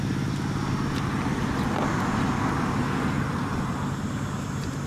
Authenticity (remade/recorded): recorded